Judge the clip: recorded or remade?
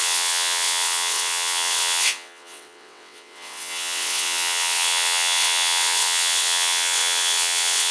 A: remade